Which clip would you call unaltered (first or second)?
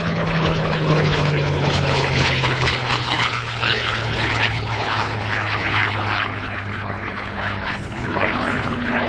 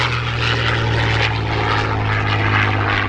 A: second